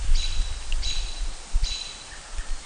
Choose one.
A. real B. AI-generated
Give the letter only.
B